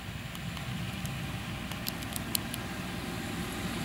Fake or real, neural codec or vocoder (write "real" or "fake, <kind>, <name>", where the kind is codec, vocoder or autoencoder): real